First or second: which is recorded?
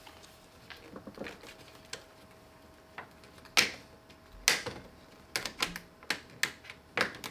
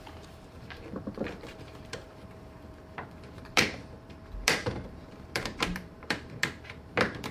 first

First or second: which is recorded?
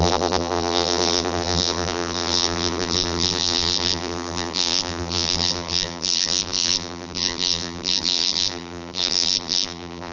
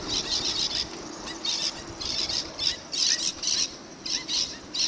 second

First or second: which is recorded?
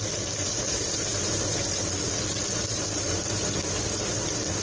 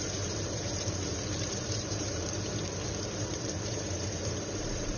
first